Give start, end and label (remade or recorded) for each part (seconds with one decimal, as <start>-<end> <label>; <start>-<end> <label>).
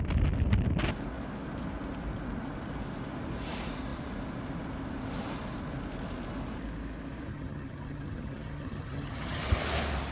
0.0-7.3 recorded; 7.3-9.4 remade; 9.4-10.1 recorded